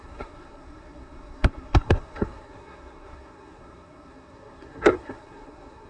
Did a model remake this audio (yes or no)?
yes